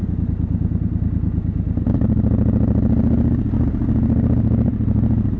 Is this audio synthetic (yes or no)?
no